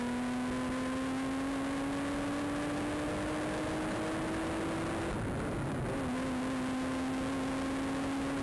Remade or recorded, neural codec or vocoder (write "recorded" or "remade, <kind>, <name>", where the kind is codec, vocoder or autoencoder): recorded